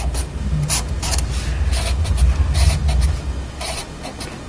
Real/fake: real